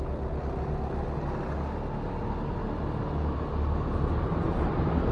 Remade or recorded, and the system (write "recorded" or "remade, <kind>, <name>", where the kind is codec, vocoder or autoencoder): recorded